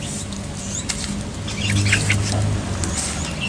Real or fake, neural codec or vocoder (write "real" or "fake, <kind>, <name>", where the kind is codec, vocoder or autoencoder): real